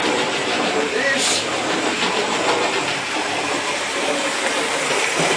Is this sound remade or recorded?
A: remade